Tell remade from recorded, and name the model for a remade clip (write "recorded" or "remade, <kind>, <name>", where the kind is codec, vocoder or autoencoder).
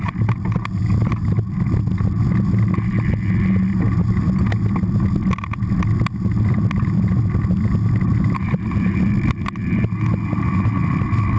recorded